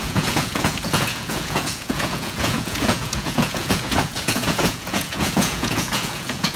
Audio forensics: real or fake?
fake